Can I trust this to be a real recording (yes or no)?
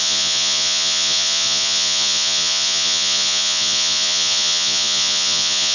no